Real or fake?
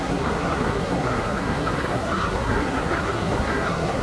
fake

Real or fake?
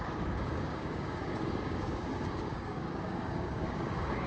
fake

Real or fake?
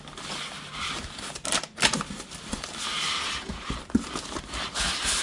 real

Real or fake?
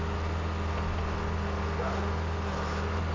real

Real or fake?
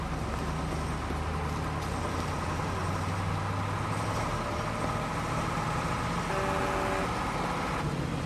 real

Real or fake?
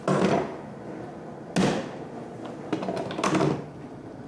real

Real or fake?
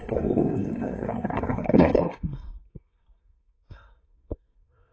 fake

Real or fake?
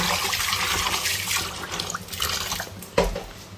real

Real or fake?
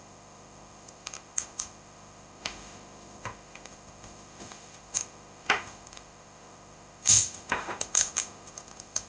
fake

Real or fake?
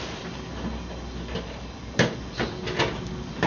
real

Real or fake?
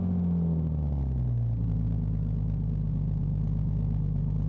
real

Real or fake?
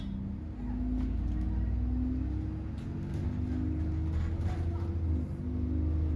real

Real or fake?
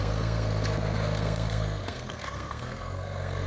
fake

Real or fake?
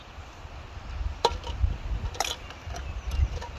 real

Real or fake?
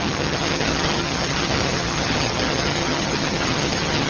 fake